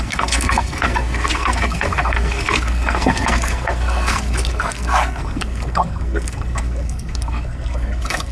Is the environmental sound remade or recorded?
remade